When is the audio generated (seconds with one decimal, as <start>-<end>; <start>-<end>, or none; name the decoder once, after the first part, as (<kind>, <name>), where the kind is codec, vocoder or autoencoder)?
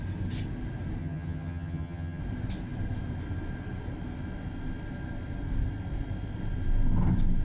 1.0-2.2 (vocoder, HiFi-GAN)